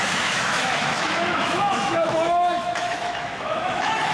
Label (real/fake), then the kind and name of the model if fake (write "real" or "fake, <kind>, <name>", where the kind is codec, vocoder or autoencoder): fake, autoencoder, DAC-VAE